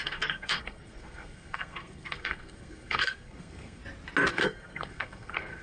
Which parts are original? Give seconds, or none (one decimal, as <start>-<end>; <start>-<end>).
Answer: 3.8-4.3